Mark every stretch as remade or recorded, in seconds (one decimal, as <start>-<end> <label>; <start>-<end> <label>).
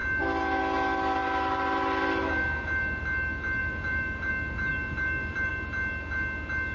0.0-3.6 recorded; 3.6-4.3 remade; 4.3-4.7 recorded; 4.7-5.5 remade; 5.5-6.7 recorded